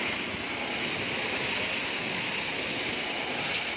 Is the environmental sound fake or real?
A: real